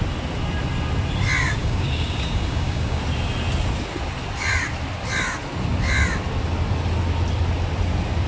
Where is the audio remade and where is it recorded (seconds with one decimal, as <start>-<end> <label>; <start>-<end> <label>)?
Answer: 0.0-1.6 recorded; 1.6-3.0 remade; 3.0-8.3 recorded